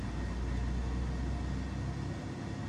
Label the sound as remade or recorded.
recorded